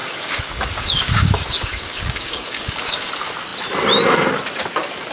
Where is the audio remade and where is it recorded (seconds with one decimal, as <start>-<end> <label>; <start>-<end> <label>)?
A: 0.0-3.1 remade; 3.1-5.1 recorded